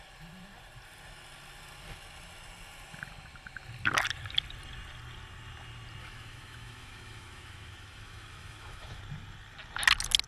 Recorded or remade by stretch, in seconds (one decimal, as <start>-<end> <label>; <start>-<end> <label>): 0.0-6.0 recorded; 6.0-9.0 remade; 9.0-10.3 recorded

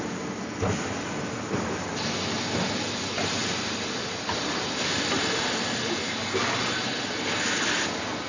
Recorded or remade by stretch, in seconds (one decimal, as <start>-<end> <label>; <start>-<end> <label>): 0.0-8.3 recorded

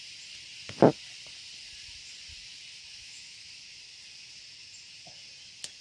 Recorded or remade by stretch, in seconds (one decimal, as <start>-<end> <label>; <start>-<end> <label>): 0.0-3.0 recorded; 3.0-3.5 remade; 3.5-5.8 recorded

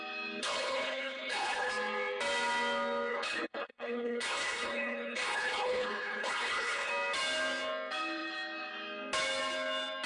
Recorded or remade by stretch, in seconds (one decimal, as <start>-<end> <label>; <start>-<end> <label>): 0.0-0.4 recorded; 0.4-1.7 remade; 1.7-3.1 recorded; 3.1-6.9 remade; 6.9-10.1 recorded

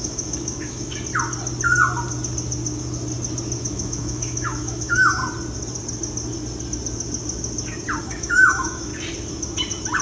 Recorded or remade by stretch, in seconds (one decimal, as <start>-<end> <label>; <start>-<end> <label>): 0.0-0.9 remade; 0.9-3.6 recorded; 3.6-5.2 remade; 5.2-8.0 recorded; 8.0-8.9 remade; 8.9-10.0 recorded

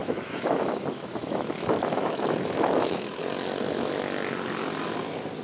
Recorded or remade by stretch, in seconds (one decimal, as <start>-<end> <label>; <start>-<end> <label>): 0.0-3.2 remade; 3.2-5.4 recorded

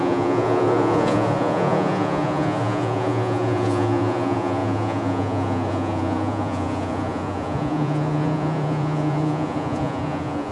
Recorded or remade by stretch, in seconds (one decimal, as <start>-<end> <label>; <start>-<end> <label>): 0.0-10.5 remade